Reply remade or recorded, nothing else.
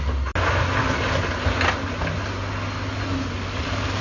recorded